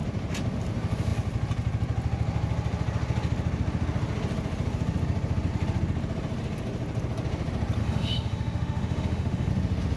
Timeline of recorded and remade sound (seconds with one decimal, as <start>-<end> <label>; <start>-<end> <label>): 0.0-7.8 recorded; 7.8-9.5 remade; 9.5-10.0 recorded